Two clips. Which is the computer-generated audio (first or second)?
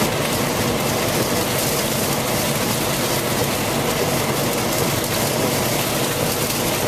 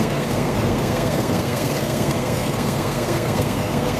second